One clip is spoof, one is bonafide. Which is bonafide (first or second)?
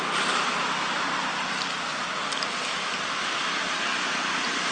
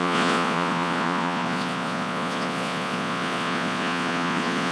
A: first